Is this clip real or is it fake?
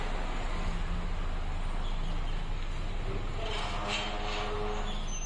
real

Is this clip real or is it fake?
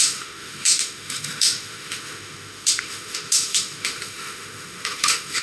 fake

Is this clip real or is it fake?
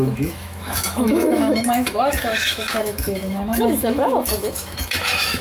fake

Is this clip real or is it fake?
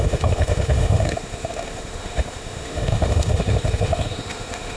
fake